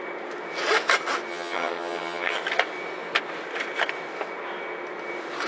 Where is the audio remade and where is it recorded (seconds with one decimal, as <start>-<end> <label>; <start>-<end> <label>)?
0.0-1.3 recorded; 1.3-2.4 remade; 2.4-5.5 recorded